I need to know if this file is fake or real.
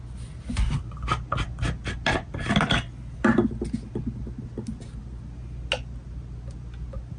real